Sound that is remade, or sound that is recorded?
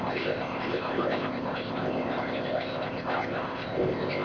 remade